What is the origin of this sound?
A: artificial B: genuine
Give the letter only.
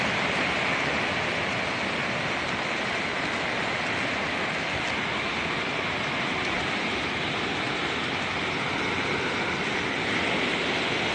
B